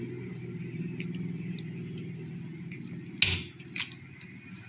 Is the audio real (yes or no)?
yes